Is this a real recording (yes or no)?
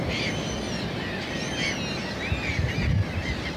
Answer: yes